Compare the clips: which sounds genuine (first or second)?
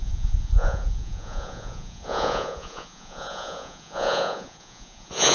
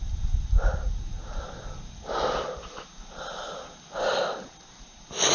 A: second